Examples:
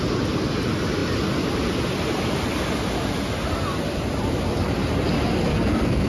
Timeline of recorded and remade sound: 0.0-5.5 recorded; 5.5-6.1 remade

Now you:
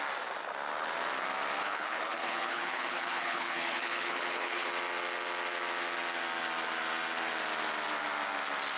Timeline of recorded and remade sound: 0.0-1.6 recorded; 1.6-4.7 remade; 4.7-8.8 recorded

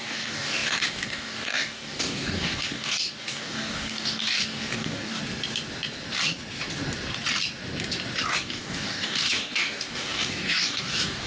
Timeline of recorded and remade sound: 0.0-5.2 remade; 5.2-8.3 recorded; 8.3-11.3 remade

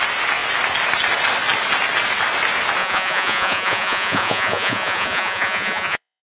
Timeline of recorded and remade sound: 0.0-2.8 recorded; 2.8-6.2 remade

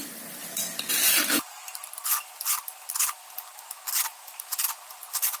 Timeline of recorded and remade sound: 0.0-5.4 recorded

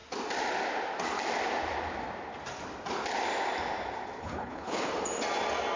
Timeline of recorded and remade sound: 0.0-4.2 recorded; 4.2-4.9 remade; 4.9-5.8 recorded

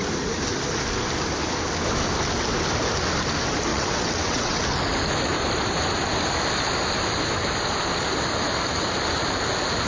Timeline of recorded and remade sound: 0.0-3.7 recorded; 3.7-4.6 remade; 4.6-9.9 recorded